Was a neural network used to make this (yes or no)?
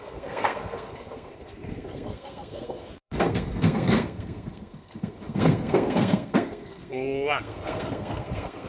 yes